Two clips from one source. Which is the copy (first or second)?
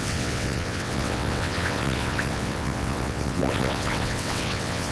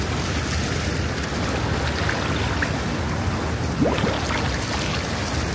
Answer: first